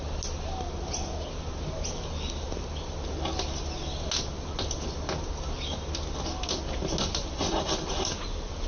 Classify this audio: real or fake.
real